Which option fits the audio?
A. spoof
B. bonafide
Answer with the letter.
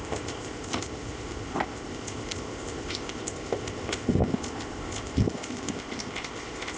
A